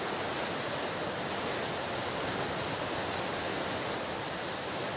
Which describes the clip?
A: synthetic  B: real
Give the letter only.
B